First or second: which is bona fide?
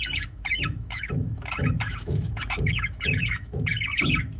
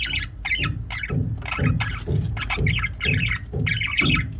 second